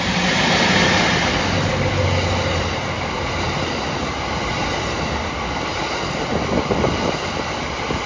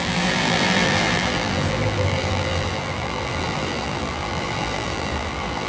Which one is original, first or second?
first